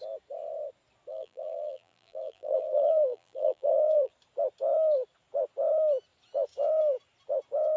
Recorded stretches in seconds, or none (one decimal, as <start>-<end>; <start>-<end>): 0.0-1.1; 4.1-7.8

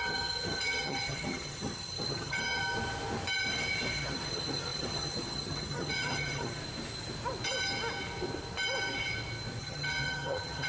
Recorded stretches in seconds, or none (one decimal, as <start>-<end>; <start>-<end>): 2.6-3.9; 6.6-9.6